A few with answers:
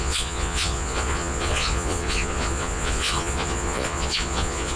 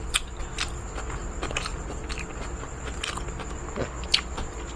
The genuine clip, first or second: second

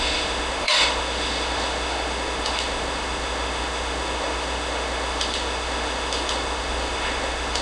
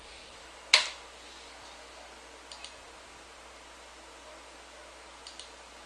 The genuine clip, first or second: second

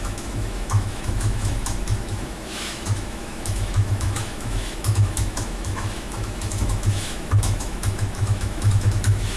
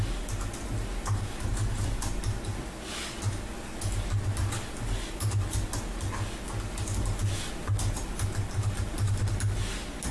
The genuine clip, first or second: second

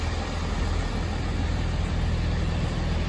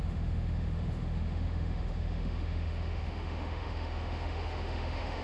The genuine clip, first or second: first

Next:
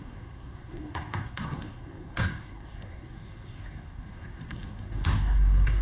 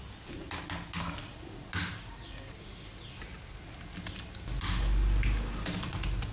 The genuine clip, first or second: second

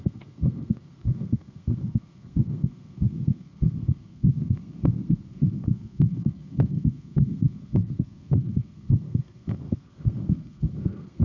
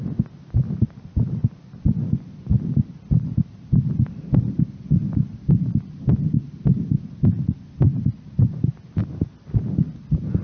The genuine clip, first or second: second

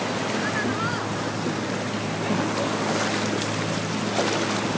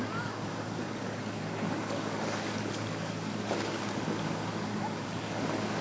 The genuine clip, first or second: first